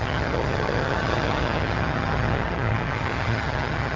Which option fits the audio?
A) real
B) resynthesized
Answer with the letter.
B